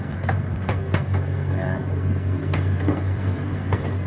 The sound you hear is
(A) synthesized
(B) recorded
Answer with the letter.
A